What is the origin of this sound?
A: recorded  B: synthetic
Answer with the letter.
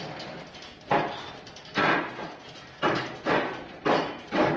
A